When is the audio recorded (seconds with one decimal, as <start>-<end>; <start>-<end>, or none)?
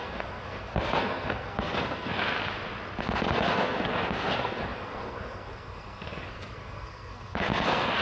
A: 2.4-3.0